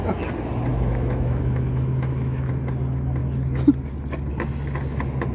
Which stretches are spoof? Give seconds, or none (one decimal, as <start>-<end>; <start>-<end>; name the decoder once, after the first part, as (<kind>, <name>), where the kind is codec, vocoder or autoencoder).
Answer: 0.7-2.5 (autoencoder, DAC-VAE)